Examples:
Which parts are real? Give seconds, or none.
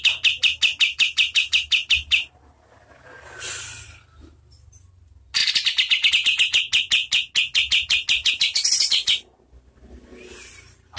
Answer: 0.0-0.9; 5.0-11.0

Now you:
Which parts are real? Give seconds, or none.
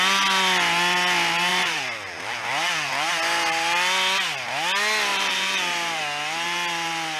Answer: 0.0-1.5; 3.1-5.1; 6.0-7.2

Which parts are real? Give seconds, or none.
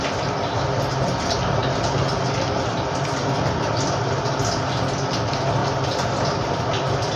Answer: 0.0-5.6; 6.6-7.2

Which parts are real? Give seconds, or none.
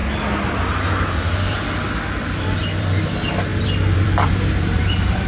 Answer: 0.0-1.1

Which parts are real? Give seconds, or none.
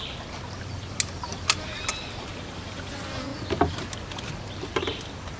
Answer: 0.0-5.4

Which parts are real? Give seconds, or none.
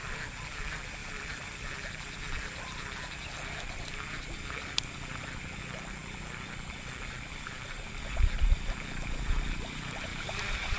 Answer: 0.6-1.0; 3.1-6.0; 7.9-10.1